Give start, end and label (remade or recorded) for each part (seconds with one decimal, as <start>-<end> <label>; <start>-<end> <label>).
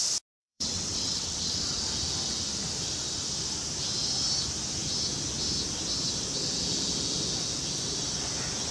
0.0-0.4 recorded; 0.4-1.8 remade; 1.8-8.7 recorded